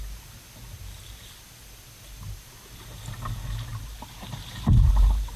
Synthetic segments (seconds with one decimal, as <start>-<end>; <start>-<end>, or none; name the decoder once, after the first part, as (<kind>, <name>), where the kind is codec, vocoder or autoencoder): 3.7-5.4 (vocoder, BigVGAN v2)